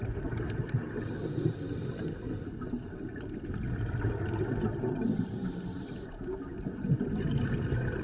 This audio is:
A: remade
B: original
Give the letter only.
B